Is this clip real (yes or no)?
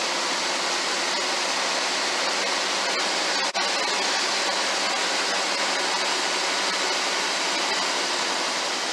yes